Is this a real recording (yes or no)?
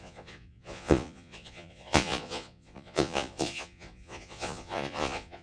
no